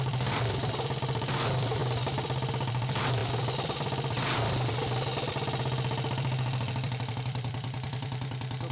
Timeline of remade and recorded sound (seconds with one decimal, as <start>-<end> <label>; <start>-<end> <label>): 0.0-8.7 remade